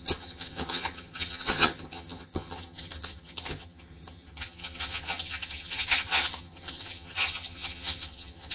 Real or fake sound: fake